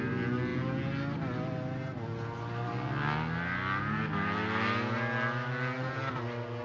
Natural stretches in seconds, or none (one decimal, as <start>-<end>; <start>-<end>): 0.0-6.6